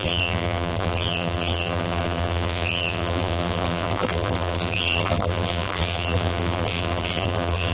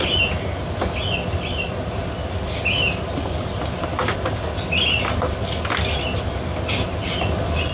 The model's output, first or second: first